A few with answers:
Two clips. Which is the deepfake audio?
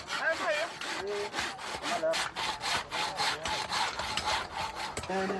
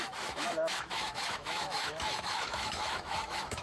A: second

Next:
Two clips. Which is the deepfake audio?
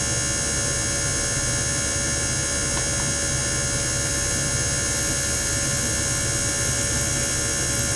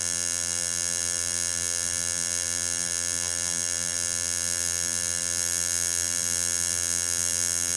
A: second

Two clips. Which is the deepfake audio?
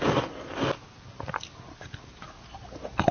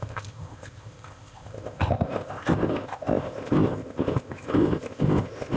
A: second